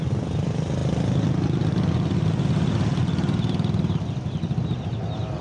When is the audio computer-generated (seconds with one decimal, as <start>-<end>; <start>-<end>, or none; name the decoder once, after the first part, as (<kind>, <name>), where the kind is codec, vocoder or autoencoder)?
none

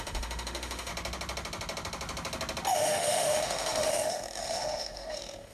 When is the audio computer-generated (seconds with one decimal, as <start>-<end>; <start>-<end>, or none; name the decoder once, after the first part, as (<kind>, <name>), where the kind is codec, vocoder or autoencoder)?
0.0-0.9 (autoencoder, DAC-VAE); 2.7-5.5

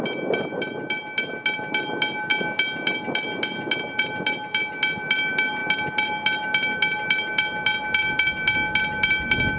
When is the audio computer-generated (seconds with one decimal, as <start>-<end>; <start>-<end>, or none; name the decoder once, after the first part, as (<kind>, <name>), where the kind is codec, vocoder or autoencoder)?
none

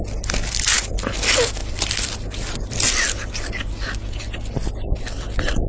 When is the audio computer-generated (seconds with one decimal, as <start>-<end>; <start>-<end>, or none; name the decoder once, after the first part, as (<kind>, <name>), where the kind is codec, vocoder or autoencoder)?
none

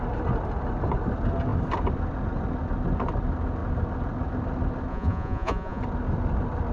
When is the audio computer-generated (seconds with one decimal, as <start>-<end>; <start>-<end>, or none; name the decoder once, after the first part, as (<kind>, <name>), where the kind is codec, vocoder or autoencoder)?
4.9-5.8 (vocoder, Vocos)

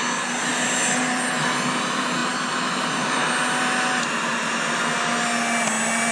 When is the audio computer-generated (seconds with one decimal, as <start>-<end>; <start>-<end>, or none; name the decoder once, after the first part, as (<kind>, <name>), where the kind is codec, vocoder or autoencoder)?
0.5-1.3 (vocoder, BigVGAN v2)

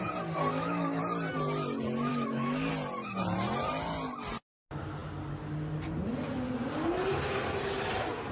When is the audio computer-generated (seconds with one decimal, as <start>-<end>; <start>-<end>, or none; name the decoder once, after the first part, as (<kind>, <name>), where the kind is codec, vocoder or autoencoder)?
0.5-1.0 (autoencoder, DAC-VAE); 2.1-2.7